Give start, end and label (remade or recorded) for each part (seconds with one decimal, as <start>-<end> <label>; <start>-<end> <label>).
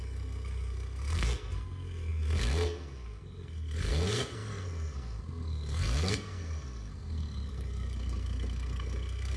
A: 0.0-9.4 remade